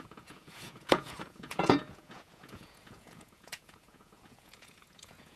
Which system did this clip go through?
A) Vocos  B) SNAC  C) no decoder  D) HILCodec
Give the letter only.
A